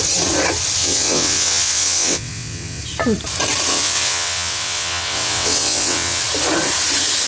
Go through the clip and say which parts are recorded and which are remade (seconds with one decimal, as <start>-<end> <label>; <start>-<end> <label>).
0.0-0.8 recorded; 0.8-2.8 remade; 2.8-3.7 recorded; 3.7-6.2 remade; 6.2-7.3 recorded